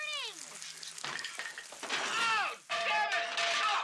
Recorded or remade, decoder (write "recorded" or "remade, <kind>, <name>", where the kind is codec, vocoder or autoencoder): recorded